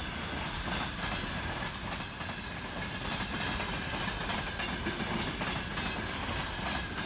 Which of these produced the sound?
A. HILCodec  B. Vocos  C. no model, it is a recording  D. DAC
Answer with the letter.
C